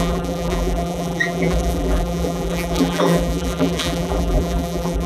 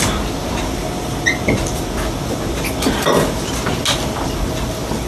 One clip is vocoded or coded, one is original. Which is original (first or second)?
second